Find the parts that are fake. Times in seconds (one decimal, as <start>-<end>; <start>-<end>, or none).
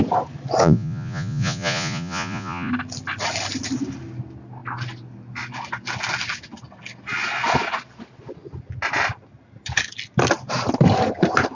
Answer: 0.6-2.7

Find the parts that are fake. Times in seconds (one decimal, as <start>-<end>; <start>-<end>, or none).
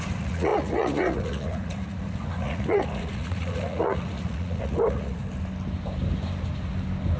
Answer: 0.0-5.2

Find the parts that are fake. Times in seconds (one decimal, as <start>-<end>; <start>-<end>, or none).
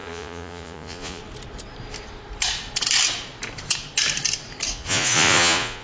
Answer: 0.0-1.2; 4.7-5.8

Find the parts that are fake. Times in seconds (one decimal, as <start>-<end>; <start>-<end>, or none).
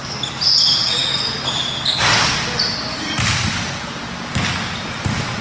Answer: none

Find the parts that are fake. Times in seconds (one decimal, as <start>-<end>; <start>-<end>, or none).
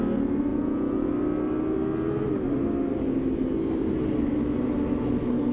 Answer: 0.5-1.1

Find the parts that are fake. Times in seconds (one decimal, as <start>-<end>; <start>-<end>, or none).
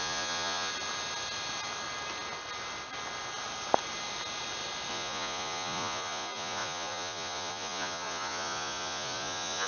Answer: 0.0-0.7; 4.9-9.7